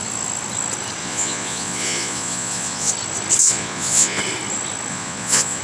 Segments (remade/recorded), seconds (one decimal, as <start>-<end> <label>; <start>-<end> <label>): 0.0-1.0 recorded; 1.0-2.9 remade; 2.9-3.4 recorded; 3.4-4.2 remade; 4.2-4.9 recorded; 4.9-5.6 remade